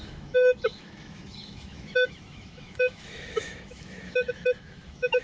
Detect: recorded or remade remade